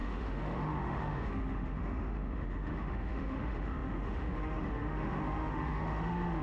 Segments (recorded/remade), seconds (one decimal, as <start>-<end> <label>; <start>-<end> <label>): 0.0-6.4 remade